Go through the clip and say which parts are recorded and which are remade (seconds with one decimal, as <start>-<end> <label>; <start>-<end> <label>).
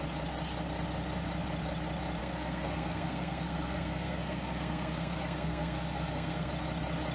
0.0-2.2 recorded; 2.2-6.5 remade; 6.5-7.1 recorded